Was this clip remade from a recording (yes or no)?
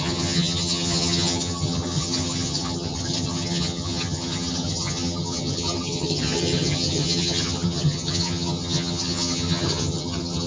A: yes